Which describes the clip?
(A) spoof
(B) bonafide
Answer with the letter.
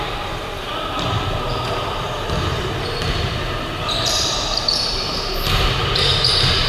A